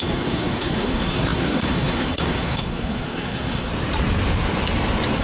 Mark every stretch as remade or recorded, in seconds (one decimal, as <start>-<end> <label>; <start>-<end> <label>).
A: 0.0-3.7 remade; 3.7-5.2 recorded